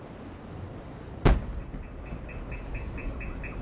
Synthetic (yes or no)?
no